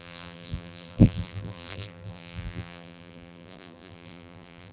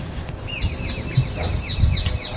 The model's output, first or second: first